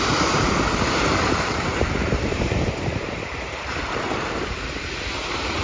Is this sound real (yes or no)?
no